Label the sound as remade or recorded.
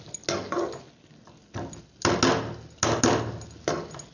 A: recorded